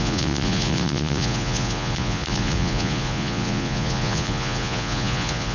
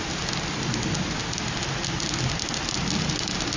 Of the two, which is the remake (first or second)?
first